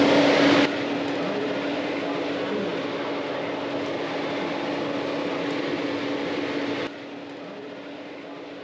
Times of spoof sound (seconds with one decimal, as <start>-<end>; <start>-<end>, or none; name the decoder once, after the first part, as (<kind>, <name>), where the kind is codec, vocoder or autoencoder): none